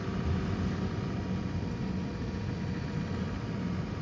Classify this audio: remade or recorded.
recorded